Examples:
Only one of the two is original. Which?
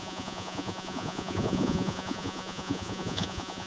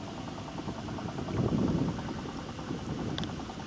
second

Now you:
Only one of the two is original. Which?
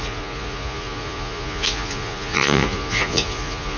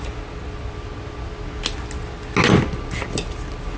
second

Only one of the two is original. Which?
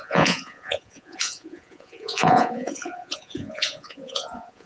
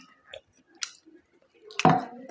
second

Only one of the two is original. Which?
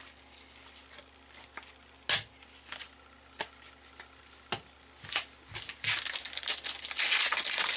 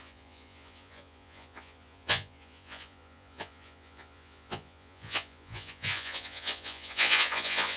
first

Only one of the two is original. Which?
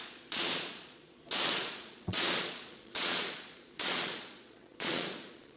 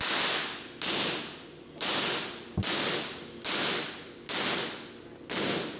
second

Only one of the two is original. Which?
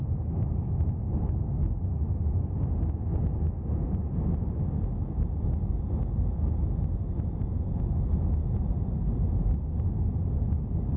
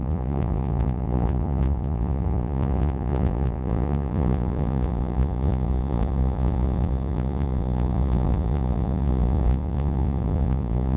first